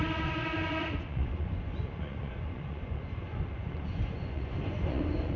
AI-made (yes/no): yes